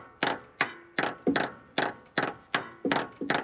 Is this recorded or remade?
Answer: recorded